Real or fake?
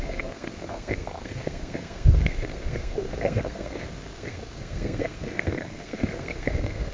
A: fake